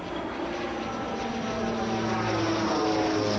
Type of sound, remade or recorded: recorded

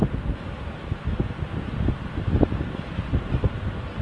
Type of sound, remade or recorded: recorded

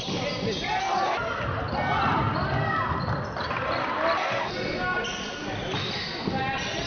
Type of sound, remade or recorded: recorded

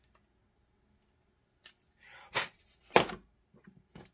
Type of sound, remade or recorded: recorded